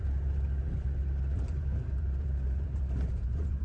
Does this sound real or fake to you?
fake